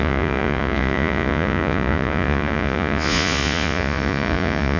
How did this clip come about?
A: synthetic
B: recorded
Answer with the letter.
A